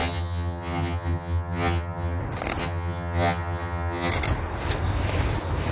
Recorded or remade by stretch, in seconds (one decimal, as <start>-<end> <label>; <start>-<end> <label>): 0.0-2.2 remade; 2.2-2.6 recorded; 2.6-4.1 remade; 4.1-5.7 recorded